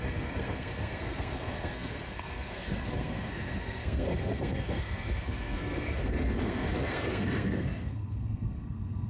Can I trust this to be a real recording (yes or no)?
no